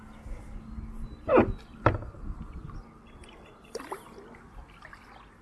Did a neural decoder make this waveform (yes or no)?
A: no